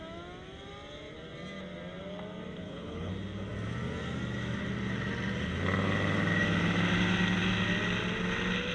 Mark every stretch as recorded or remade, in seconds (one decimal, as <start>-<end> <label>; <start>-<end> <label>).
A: 0.0-2.6 recorded; 2.6-3.1 remade; 3.1-8.7 recorded